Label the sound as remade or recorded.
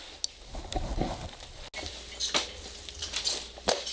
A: recorded